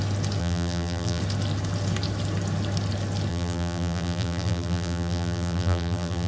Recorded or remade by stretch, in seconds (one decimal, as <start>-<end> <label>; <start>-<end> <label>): 0.0-0.4 recorded; 0.4-1.2 remade; 1.2-3.3 recorded; 3.3-6.3 remade